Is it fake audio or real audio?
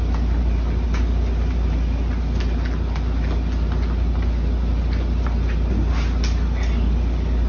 real